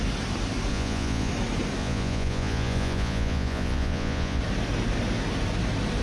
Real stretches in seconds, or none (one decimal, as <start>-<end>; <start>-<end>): 0.0-0.7; 1.3-1.8; 4.4-6.0